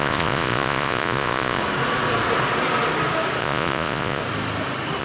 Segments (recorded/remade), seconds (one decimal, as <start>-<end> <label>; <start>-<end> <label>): 0.0-1.6 remade; 1.6-3.4 recorded; 3.4-4.2 remade; 4.2-5.0 recorded